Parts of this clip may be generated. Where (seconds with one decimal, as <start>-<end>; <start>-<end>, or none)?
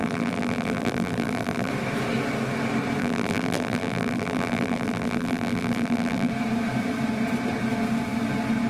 0.0-1.7; 3.0-6.3